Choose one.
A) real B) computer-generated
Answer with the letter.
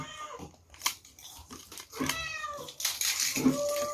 A